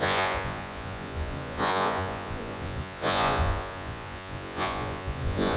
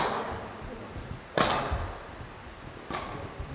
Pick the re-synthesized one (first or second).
first